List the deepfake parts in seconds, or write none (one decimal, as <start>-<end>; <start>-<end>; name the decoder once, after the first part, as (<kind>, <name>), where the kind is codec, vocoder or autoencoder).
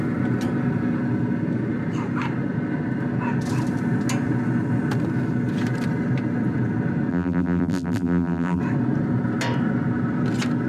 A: 7.1-8.6 (vocoder, BigVGAN v2)